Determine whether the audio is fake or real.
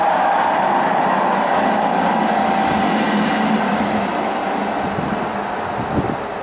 real